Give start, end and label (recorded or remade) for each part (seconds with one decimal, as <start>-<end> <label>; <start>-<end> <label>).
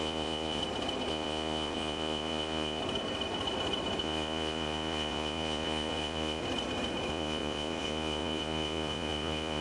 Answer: 0.0-0.6 remade; 0.6-1.1 recorded; 1.1-2.8 remade; 2.8-4.0 recorded; 4.0-6.4 remade; 6.4-7.1 recorded; 7.1-9.6 remade